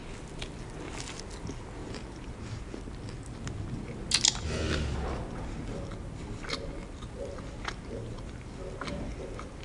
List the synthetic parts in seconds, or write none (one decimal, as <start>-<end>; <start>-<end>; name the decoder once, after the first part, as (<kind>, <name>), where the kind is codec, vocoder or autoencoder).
none